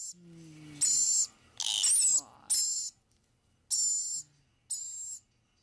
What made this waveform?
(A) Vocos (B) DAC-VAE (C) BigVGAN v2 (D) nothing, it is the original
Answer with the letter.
D